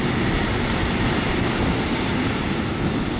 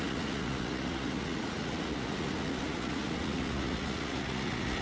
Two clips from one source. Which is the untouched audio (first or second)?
first